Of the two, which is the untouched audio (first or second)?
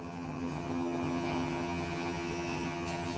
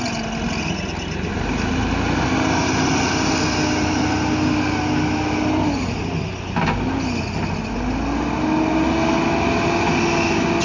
second